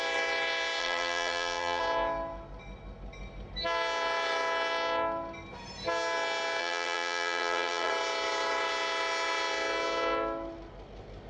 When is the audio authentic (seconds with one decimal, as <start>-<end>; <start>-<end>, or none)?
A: 0.0-0.8; 1.8-6.6; 7.9-11.3